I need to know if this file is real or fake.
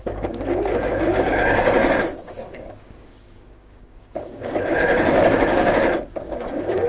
fake